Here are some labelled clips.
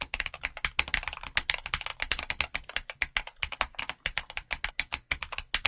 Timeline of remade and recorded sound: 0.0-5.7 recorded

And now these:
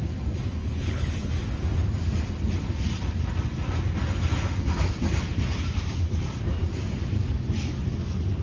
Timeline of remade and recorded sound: 0.0-0.6 recorded; 0.6-1.3 remade; 1.3-8.4 recorded